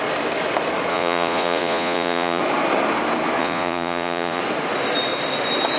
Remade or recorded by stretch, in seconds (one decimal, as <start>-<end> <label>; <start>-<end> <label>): 0.0-0.9 recorded; 0.9-2.4 remade; 2.4-3.4 recorded; 3.4-4.4 remade; 4.4-5.8 recorded